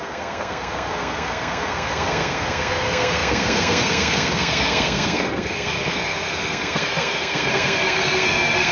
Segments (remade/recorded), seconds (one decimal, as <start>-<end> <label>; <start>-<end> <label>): 0.0-8.7 remade